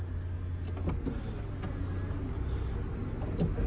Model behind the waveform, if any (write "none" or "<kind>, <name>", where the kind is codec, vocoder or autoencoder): none